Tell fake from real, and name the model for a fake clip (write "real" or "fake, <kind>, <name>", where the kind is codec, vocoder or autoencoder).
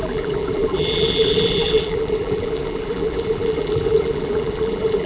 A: fake, vocoder, BigVGAN v2